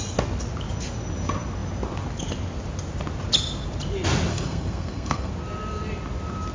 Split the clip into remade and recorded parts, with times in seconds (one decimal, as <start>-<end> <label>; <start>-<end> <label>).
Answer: 0.0-4.3 recorded; 4.3-5.3 remade; 5.3-6.5 recorded